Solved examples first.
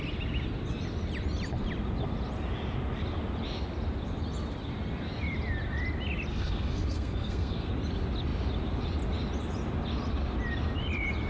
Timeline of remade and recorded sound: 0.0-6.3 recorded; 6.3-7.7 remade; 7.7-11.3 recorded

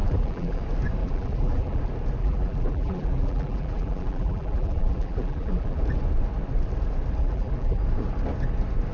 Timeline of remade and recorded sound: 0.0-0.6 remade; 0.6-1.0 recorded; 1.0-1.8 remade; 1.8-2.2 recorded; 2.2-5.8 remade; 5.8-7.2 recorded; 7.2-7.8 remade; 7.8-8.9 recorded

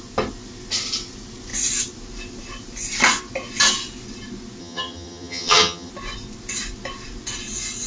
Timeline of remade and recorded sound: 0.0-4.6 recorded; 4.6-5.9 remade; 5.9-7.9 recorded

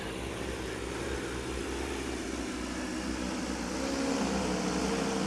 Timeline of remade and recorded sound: 0.0-5.3 recorded

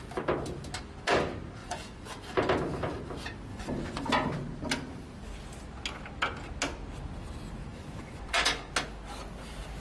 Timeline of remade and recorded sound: 0.0-1.6 recorded; 1.6-2.1 remade; 2.1-3.5 recorded; 3.5-4.1 remade; 4.1-7.7 recorded; 7.7-8.7 remade; 8.7-9.8 recorded

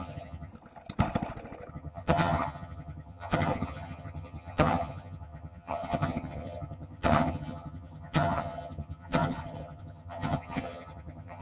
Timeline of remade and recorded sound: 0.0-0.5 remade; 0.5-1.7 recorded; 1.7-11.4 remade

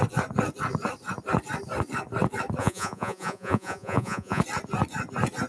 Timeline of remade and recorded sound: 0.0-2.6 recorded; 2.6-4.4 remade; 4.4-5.5 recorded